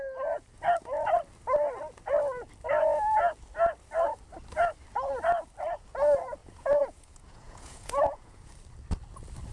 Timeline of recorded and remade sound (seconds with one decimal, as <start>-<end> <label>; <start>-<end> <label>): 0.0-6.4 recorded; 6.4-8.5 remade; 8.5-9.5 recorded